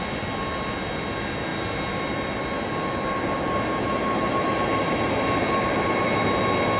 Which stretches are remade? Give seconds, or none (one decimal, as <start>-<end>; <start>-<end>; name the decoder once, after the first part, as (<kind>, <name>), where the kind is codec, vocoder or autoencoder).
none